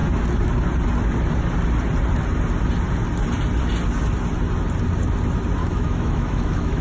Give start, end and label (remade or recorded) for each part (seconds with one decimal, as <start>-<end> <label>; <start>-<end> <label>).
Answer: 0.0-5.6 recorded; 5.6-6.8 remade